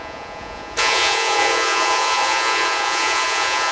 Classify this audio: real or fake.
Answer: fake